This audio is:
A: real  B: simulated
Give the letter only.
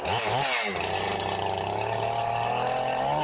A